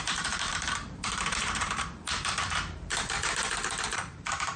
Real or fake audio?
fake